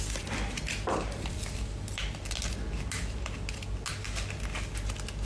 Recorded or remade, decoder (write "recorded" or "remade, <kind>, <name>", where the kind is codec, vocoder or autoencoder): recorded